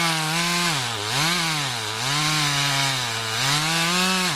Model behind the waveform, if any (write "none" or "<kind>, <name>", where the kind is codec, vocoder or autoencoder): none